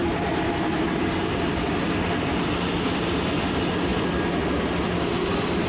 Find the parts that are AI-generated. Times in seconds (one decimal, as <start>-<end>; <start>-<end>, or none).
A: none